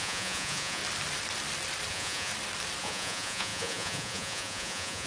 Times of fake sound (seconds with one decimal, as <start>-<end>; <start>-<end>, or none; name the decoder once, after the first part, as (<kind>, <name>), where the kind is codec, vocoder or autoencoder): 0.0-0.8 (vocoder, Vocos); 1.9-2.3; 2.8-5.1

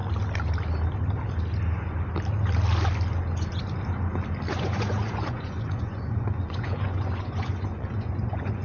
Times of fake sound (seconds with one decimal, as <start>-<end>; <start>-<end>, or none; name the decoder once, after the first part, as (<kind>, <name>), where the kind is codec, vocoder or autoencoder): 4.5-8.6 (vocoder, Vocos)

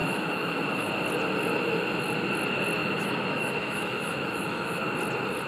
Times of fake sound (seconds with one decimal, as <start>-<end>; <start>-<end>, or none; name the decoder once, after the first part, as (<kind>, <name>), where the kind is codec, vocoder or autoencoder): 0.0-0.9 (autoencoder, DAC-VAE); 2.8-4.8

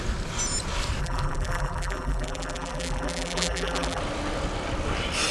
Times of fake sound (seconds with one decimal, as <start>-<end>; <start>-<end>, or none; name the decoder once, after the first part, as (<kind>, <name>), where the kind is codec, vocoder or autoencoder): 1.0-4.0 (vocoder, BigVGAN v2)